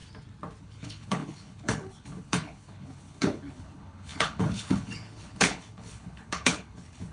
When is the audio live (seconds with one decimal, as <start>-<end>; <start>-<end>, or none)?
0.0-0.6